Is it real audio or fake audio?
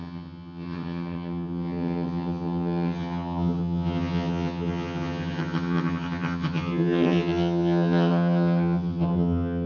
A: fake